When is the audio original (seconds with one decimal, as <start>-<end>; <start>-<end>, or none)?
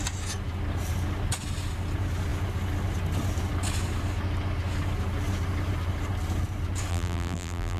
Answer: 0.0-6.9